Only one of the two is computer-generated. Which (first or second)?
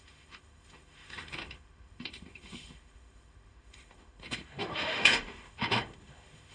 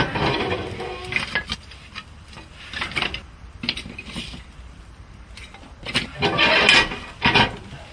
first